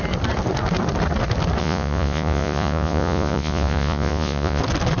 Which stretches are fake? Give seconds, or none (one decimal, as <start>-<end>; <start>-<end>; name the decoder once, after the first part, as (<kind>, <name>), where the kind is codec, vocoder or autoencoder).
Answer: 1.6-4.6 (vocoder, Vocos)